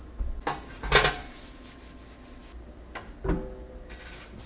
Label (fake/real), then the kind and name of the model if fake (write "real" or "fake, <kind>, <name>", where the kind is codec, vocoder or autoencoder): real